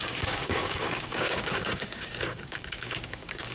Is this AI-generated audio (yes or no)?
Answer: yes